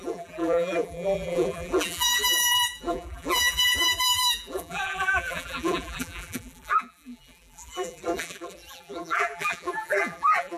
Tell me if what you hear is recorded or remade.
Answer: remade